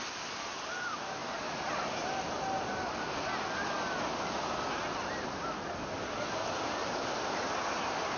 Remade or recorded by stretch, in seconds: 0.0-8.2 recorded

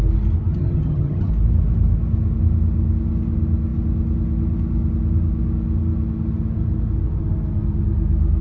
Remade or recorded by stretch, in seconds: 0.0-0.5 recorded; 0.5-1.3 remade; 1.3-8.4 recorded

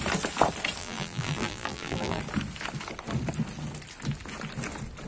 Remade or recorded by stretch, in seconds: 0.0-0.8 recorded; 0.8-2.2 remade; 2.2-5.1 recorded

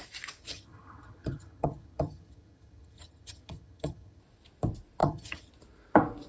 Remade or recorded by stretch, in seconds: 0.0-0.4 recorded; 0.4-4.2 remade; 4.2-5.0 recorded; 5.0-5.5 remade; 5.5-6.3 recorded

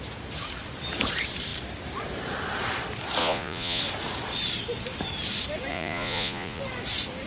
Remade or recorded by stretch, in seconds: 0.0-3.2 recorded; 3.2-3.8 remade; 3.8-5.7 recorded; 5.7-6.6 remade; 6.6-7.3 recorded

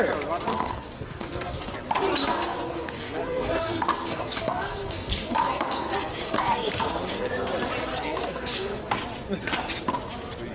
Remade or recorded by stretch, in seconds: 0.0-0.5 recorded; 0.5-1.7 remade; 1.7-2.2 recorded; 2.2-7.3 remade; 7.3-7.9 recorded; 7.9-8.8 remade; 8.8-10.5 recorded

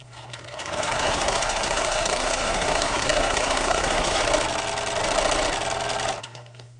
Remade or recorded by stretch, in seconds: 0.0-4.2 remade; 4.2-6.2 recorded; 6.2-6.8 remade